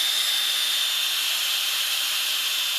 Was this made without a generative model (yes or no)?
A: yes